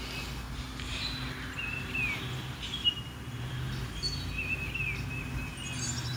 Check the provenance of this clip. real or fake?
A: real